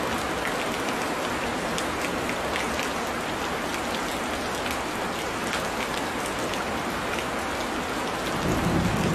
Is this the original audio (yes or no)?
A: yes